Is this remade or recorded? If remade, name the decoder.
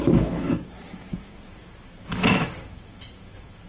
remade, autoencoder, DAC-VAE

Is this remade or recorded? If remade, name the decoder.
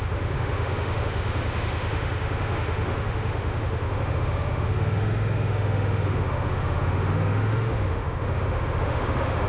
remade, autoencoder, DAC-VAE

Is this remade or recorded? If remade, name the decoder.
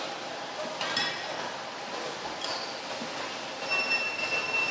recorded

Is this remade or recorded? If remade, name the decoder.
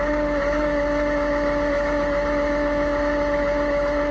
remade, autoencoder, DAC-VAE